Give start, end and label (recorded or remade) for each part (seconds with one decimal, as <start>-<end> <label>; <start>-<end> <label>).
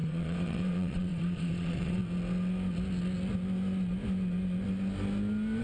0.0-2.0 remade; 2.0-5.6 recorded